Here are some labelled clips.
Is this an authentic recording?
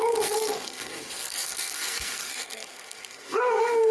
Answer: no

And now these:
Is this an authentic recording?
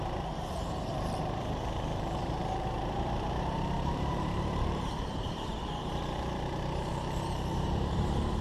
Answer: no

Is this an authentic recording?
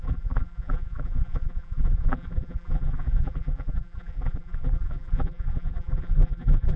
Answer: no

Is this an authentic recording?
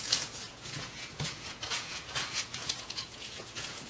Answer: no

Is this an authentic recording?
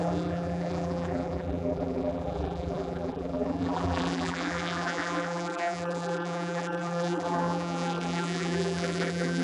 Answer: no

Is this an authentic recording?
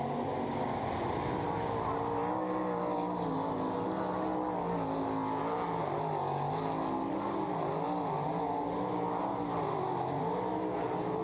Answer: yes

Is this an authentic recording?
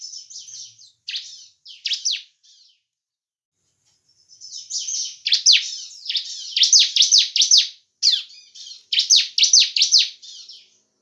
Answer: yes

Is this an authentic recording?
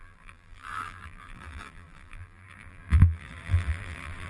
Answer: no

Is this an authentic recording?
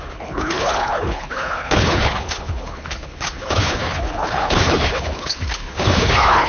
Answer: no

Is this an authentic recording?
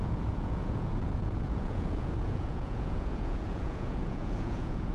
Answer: no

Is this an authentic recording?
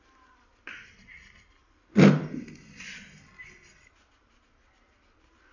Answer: yes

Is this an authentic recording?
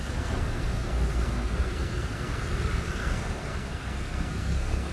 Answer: no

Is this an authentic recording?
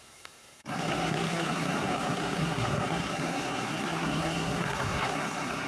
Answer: no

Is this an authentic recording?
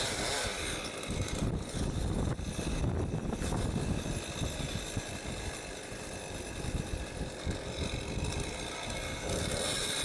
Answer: yes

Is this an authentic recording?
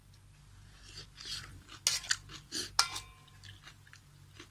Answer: yes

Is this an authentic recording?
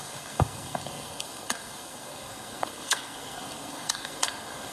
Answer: no